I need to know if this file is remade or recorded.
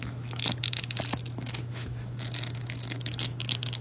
remade